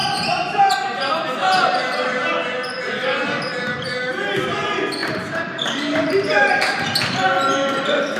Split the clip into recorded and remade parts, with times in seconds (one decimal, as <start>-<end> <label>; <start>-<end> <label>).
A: 0.0-5.0 recorded; 5.0-7.0 remade; 7.0-8.2 recorded